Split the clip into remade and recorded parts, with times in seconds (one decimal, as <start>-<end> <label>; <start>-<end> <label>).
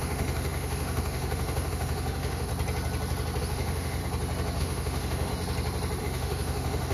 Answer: 0.0-2.5 remade; 2.5-3.4 recorded; 3.4-4.0 remade; 4.0-4.6 recorded; 4.6-5.3 remade; 5.3-6.0 recorded; 6.0-6.9 remade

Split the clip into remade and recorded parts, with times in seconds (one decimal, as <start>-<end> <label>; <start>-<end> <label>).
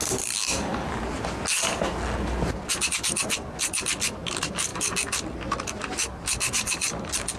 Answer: 0.0-7.4 recorded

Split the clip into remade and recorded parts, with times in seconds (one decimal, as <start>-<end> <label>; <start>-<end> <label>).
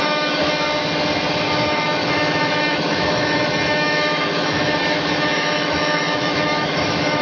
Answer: 0.0-0.4 remade; 0.4-1.3 recorded; 1.3-7.2 remade